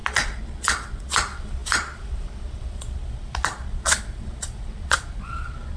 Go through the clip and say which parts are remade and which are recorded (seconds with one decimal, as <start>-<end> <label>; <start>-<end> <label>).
0.0-5.8 remade